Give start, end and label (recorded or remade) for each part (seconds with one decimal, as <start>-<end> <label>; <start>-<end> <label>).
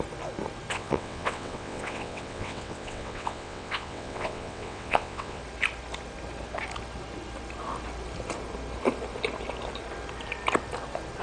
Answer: 0.0-0.7 recorded; 0.7-5.4 remade; 5.4-11.2 recorded